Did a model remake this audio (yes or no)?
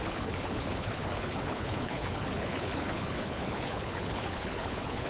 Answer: yes